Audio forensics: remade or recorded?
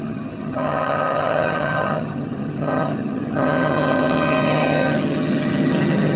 remade